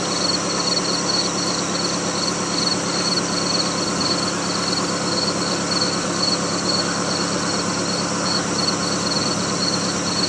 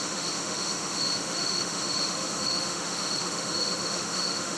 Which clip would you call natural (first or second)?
first